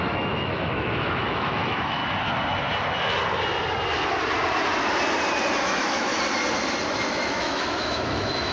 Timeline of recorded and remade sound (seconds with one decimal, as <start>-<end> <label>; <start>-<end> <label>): 0.0-2.0 remade; 2.0-5.6 recorded; 5.6-6.1 remade; 6.1-7.1 recorded; 7.1-8.5 remade